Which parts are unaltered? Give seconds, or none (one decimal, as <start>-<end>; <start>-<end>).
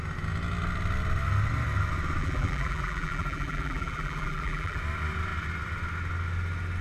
0.0-2.2; 4.8-6.8